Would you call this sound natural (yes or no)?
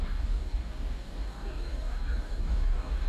no